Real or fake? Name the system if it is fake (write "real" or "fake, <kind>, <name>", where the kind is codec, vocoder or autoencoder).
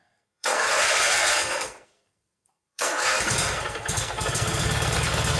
fake, codec, SNAC